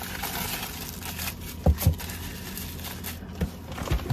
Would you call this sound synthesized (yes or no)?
no